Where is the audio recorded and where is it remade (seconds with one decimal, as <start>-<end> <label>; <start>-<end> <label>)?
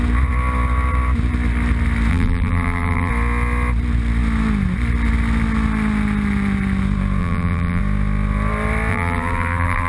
0.0-2.1 recorded; 2.1-3.1 remade; 3.1-7.2 recorded; 7.2-7.8 remade; 7.8-8.9 recorded; 8.9-9.9 remade